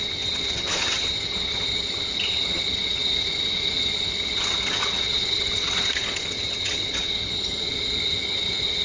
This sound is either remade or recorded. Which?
remade